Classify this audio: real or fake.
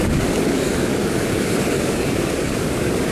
fake